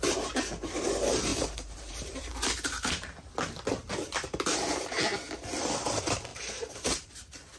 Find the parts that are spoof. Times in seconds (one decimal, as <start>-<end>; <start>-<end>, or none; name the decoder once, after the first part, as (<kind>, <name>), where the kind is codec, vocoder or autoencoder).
1.3-3.2 (vocoder, BigVGAN v2); 6.3-7.1